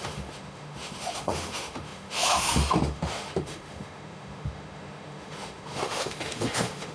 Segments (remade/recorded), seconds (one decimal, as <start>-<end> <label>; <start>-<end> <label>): 0.0-6.9 remade